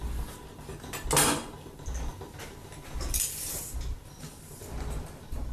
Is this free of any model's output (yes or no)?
yes